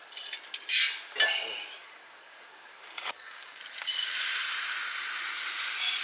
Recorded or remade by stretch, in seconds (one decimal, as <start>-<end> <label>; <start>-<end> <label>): 0.0-1.8 recorded; 1.8-3.6 remade; 3.6-6.0 recorded